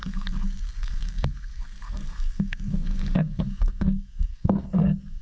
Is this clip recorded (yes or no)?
no